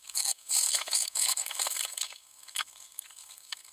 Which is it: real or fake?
fake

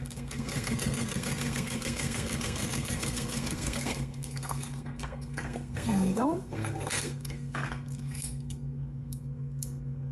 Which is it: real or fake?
fake